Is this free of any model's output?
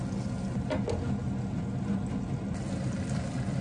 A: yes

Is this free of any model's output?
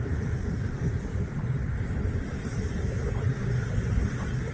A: no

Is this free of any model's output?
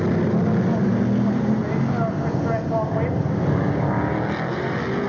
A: yes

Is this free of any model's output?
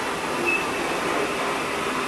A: yes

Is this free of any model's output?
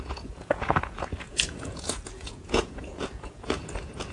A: no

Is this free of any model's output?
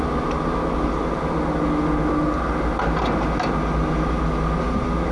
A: yes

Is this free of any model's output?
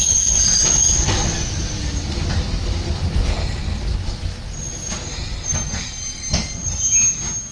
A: yes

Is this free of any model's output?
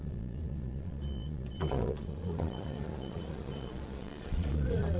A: no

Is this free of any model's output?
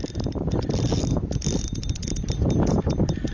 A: no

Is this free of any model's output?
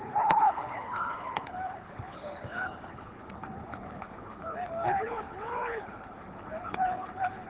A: no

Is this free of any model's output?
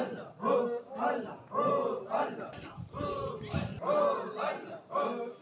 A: yes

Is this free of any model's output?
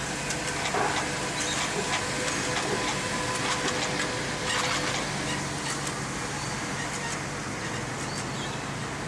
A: yes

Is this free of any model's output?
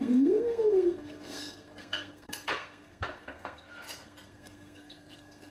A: no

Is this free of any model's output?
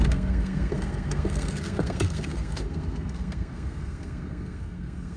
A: no